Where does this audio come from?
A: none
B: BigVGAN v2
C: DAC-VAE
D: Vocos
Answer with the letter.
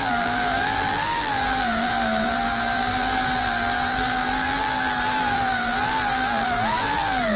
B